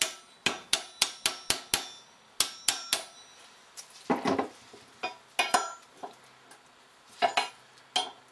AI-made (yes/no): no